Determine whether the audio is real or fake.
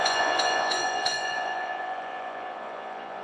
fake